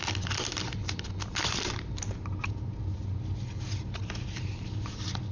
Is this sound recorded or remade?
recorded